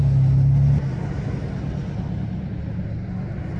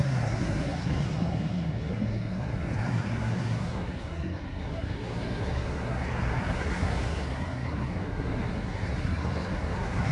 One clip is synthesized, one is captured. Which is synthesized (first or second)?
second